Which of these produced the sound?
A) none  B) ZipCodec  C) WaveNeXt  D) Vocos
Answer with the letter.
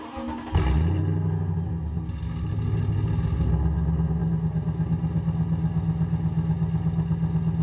A